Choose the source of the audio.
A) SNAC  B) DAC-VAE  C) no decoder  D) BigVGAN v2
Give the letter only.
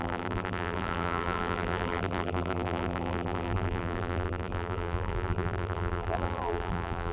D